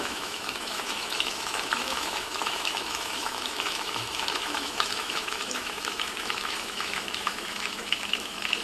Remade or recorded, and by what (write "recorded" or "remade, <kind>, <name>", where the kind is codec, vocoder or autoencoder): remade, autoencoder, DAC-VAE